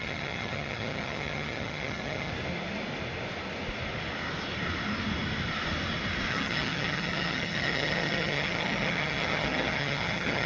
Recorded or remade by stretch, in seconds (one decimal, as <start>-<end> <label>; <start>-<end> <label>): 0.0-2.3 remade; 2.3-6.3 recorded; 6.3-10.5 remade